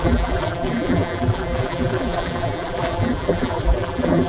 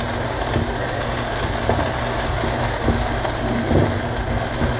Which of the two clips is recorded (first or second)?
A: second